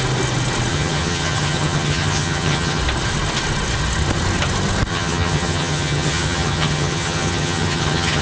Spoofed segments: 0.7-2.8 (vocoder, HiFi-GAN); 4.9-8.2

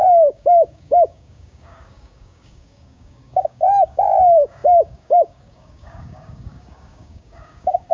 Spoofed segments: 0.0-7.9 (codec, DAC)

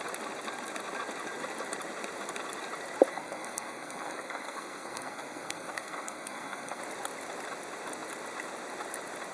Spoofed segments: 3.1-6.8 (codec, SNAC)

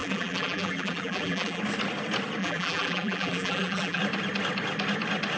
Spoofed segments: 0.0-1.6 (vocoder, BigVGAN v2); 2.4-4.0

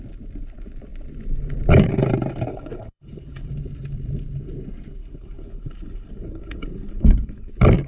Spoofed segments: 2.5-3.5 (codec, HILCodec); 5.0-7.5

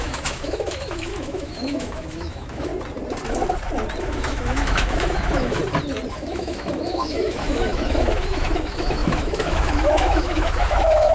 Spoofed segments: 0.0-2.7 (autoencoder, DAC-VAE); 4.0-5.6; 6.1-11.1

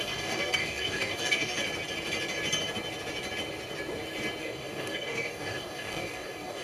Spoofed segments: 0.0-1.6 (codec, DAC); 4.4-6.6

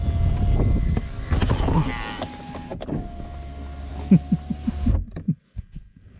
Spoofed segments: none